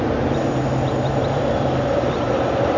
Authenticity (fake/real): fake